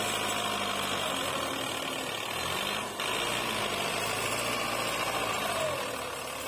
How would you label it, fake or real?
real